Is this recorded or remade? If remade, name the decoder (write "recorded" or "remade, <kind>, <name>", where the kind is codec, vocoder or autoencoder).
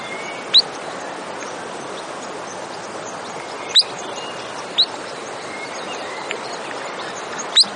recorded